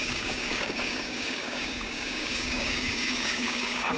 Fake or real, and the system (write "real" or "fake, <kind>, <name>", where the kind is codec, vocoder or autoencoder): fake, codec, DAC